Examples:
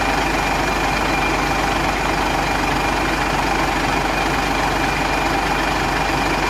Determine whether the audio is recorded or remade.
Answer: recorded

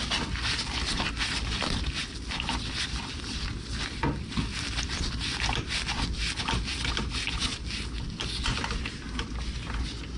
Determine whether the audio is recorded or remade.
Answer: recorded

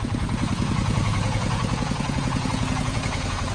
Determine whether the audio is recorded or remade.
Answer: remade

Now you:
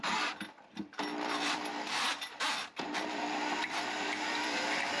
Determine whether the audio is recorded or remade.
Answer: remade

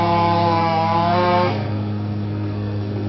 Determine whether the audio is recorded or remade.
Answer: remade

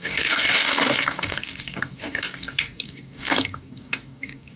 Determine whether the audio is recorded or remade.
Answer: remade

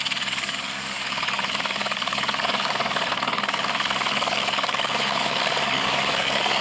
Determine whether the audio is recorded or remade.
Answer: remade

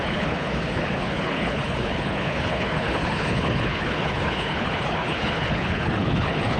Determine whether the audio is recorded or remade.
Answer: remade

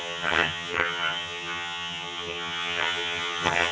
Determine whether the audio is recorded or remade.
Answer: remade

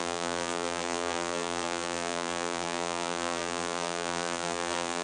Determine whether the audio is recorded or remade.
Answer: remade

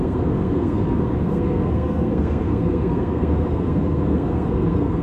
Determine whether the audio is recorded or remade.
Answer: remade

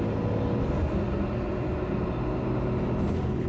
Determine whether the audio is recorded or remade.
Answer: recorded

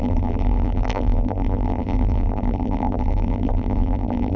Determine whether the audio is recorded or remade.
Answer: remade